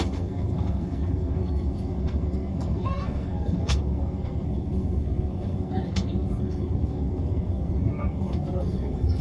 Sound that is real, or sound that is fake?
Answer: fake